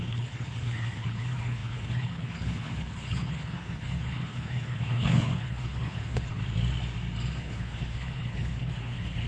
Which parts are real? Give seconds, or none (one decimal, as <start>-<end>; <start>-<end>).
6.4-7.4